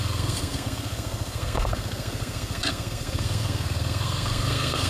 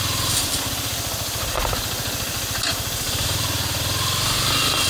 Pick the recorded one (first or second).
second